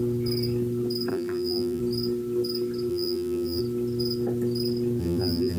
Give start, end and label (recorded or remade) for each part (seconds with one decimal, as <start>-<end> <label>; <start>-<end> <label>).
0.0-1.1 recorded; 1.1-1.8 remade; 1.8-2.9 recorded; 2.9-3.6 remade; 3.6-5.0 recorded; 5.0-5.6 remade